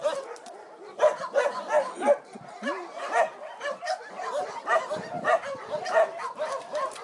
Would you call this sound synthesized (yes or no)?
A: no